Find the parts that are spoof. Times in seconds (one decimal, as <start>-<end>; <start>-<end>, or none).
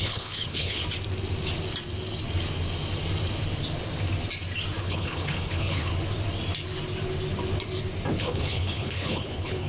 0.0-0.8; 4.8-5.9; 8.1-9.7